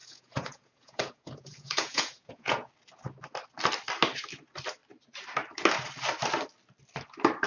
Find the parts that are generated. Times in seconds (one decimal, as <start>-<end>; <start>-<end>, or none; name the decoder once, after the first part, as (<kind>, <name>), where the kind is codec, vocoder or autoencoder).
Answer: 0.0-2.7 (vocoder, Vocos)